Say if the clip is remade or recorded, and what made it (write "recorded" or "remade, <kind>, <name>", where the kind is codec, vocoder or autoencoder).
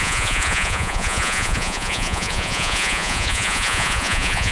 remade, vocoder, Vocos